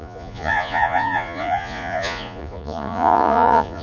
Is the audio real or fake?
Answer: fake